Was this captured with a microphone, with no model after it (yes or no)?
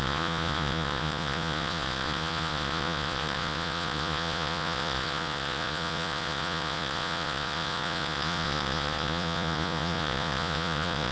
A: no